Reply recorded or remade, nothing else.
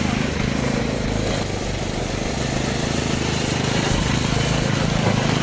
recorded